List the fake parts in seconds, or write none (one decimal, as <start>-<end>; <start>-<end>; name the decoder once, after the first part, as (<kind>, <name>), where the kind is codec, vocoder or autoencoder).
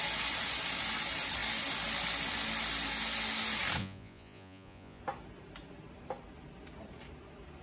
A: 3.8-5.0 (vocoder, Vocos)